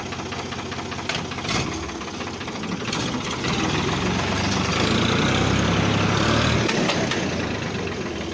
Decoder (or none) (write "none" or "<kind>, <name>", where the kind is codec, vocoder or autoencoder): none